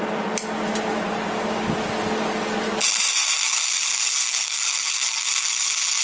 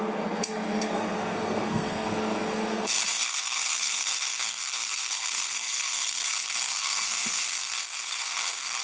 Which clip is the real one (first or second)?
first